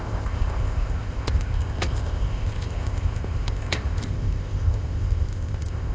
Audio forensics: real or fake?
fake